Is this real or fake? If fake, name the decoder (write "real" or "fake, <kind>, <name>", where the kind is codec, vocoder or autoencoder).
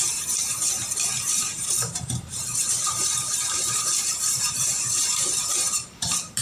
fake, vocoder, BigVGAN v2